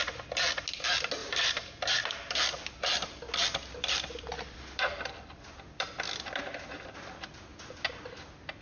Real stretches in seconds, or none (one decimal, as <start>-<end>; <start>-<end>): 0.0-1.2; 6.3-8.6